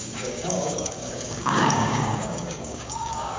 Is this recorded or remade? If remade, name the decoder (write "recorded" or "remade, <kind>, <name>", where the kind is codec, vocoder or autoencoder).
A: remade, codec, DAC